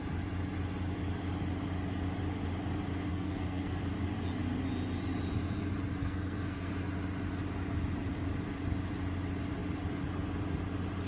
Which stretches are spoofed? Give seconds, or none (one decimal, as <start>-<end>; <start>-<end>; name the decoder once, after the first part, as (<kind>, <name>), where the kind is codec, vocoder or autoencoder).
3.1-3.8 (codec, SNAC); 6.0-6.7